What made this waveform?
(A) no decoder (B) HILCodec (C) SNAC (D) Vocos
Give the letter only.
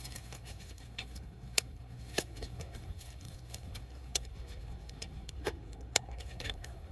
C